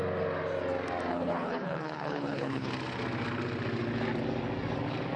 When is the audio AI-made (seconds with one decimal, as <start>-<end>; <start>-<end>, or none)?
1.1-2.7

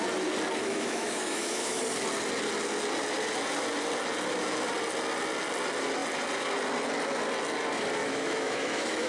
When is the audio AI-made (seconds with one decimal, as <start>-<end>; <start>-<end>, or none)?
0.6-1.8; 8.0-9.1

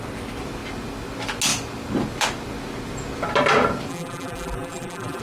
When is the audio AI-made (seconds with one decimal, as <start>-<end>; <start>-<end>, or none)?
3.9-5.2

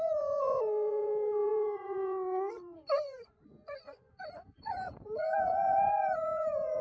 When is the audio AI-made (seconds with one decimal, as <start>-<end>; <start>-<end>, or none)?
0.0-6.8

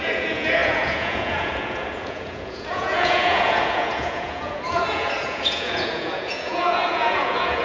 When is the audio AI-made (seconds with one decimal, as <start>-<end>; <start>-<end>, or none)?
0.0-7.6

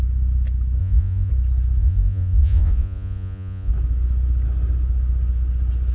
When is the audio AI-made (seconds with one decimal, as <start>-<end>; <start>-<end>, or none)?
0.8-1.3; 1.8-3.7

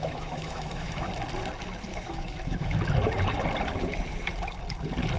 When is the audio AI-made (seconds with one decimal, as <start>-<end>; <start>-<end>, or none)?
0.0-1.1; 1.9-2.8

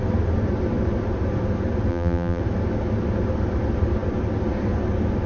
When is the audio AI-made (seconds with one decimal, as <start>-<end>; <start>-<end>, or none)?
1.9-2.4